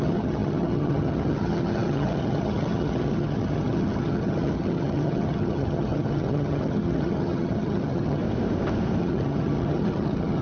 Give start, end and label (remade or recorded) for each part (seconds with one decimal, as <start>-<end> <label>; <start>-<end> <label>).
0.0-8.2 remade; 8.2-9.0 recorded; 9.0-10.4 remade